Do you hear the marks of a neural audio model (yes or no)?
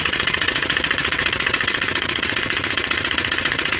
yes